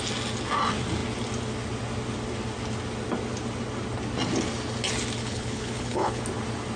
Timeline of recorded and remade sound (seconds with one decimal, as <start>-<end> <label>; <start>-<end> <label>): 0.0-5.2 recorded; 5.2-6.2 remade; 6.2-6.8 recorded